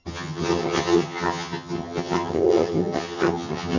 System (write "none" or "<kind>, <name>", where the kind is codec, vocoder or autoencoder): vocoder, HiFi-GAN